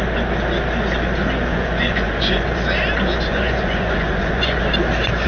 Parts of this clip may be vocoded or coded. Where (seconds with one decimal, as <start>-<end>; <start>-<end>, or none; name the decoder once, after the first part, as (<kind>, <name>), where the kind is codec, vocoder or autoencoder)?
1.5-2.6 (vocoder, Vocos); 3.3-4.6